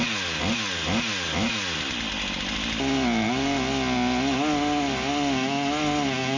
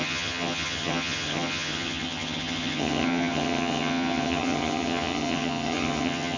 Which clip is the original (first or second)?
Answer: first